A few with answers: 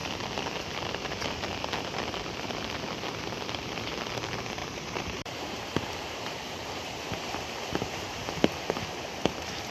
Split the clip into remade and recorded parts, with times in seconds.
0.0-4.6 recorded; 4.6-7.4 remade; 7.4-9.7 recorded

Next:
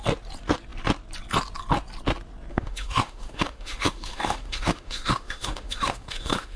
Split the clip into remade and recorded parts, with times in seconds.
0.0-2.5 recorded; 2.5-6.6 remade

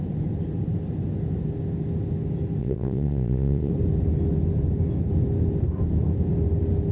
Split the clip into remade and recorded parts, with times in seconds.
0.0-2.6 recorded; 2.6-3.7 remade; 3.7-6.9 recorded

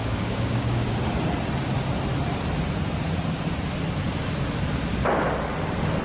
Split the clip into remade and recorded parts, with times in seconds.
0.0-0.9 remade; 0.9-6.0 recorded

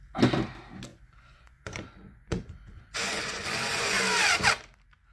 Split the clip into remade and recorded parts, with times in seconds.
0.0-0.9 recorded; 0.9-4.0 remade; 4.0-5.1 recorded